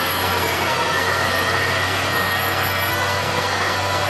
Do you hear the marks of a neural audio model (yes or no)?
yes